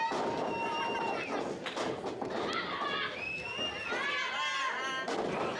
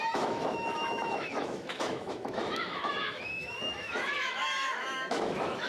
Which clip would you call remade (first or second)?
second